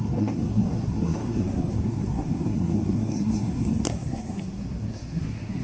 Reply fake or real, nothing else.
fake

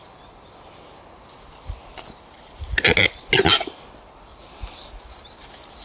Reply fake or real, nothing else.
real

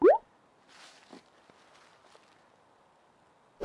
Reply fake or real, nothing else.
real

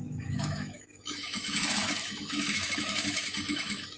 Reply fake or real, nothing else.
fake